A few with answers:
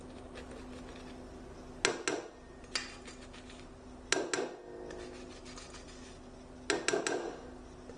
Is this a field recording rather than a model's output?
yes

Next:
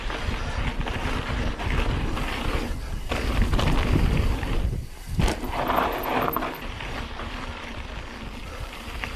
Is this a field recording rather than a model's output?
yes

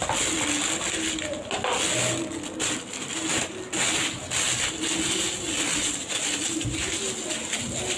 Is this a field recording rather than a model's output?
yes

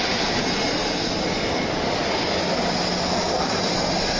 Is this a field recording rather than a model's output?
yes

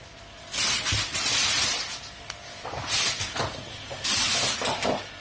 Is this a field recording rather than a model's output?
yes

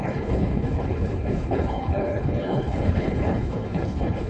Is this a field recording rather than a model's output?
no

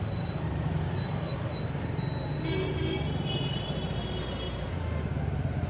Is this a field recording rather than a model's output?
yes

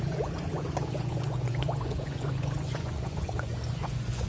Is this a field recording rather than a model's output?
no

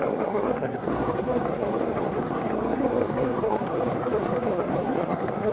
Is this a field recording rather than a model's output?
no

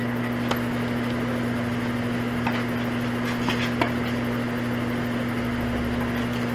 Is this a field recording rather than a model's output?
yes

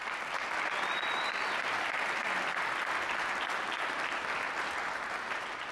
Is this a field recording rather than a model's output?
yes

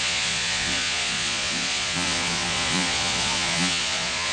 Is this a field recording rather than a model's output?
no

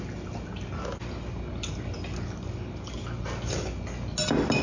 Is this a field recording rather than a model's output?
yes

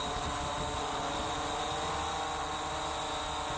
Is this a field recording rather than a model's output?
yes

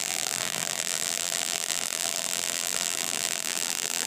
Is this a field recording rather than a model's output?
no